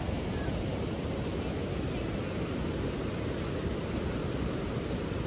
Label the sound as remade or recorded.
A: recorded